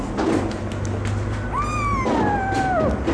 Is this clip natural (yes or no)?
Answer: yes